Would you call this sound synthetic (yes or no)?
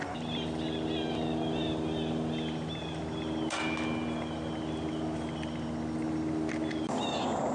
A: no